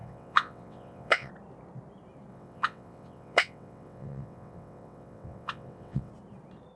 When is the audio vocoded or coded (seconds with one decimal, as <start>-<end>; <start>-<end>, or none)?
0.0-1.3; 2.3-6.1